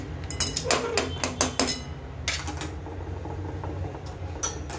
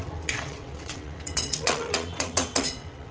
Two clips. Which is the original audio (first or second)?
first